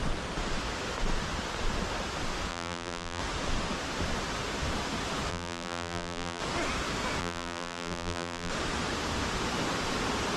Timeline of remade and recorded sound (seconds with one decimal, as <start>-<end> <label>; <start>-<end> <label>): 0.0-2.5 recorded; 2.5-3.2 remade; 3.2-5.3 recorded; 5.3-6.4 remade; 6.4-7.2 recorded; 7.2-8.5 remade; 8.5-10.4 recorded